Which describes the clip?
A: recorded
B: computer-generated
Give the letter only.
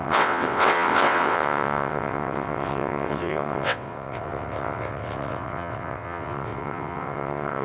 B